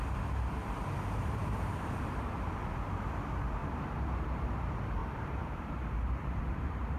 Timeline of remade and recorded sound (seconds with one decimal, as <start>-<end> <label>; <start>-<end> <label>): 0.0-0.6 recorded; 0.6-2.3 remade; 2.3-3.6 recorded; 3.6-4.4 remade; 4.4-5.0 recorded; 5.0-7.0 remade